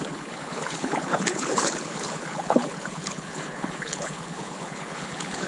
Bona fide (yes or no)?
no